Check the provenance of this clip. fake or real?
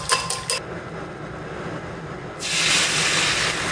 real